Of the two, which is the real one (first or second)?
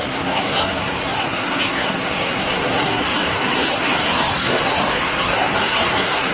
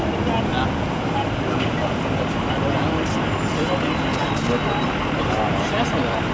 second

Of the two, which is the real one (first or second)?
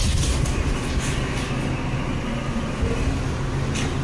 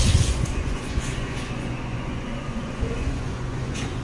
first